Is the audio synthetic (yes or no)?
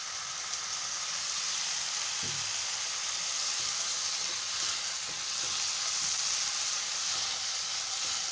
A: no